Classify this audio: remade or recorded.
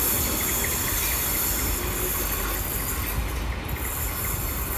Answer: recorded